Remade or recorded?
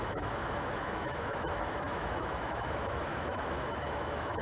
remade